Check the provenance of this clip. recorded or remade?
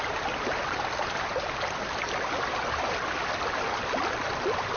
recorded